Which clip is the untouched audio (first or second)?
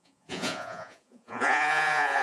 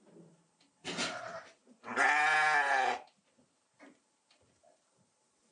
second